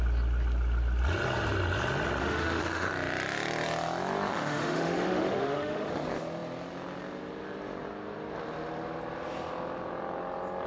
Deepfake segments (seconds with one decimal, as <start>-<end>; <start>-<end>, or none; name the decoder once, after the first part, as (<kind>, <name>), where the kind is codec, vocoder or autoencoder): 2.2-2.9 (autoencoder, DAC-VAE); 4.3-5.9